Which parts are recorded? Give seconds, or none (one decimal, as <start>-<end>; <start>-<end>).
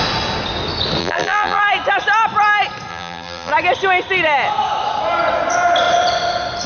0.0-1.0; 1.6-2.9; 3.5-6.7